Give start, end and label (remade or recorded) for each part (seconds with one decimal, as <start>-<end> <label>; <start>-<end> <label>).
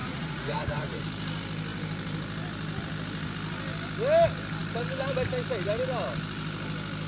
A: 0.0-1.0 remade; 1.0-7.1 recorded